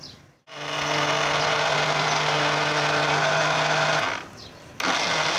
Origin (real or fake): real